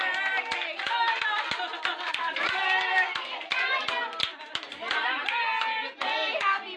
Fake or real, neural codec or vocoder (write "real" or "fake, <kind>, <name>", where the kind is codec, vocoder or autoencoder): real